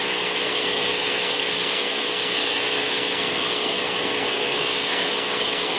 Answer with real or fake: fake